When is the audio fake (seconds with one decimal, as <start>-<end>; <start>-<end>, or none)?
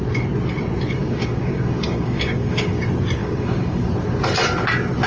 1.0-2.8; 3.2-3.9